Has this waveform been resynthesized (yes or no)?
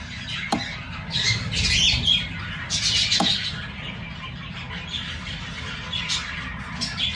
no